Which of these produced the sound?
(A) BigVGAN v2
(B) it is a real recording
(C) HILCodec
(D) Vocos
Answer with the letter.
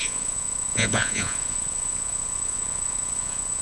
D